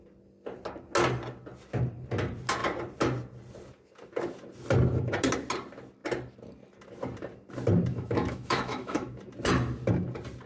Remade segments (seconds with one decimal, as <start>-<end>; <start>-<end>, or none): 7.9-9.2